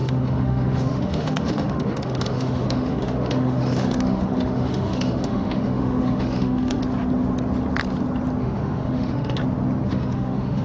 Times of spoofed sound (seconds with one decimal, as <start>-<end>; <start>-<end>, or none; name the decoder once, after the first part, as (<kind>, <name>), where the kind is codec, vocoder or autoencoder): 0.0-6.8 (autoencoder, DAC-VAE); 8.4-9.4; 9.9-10.6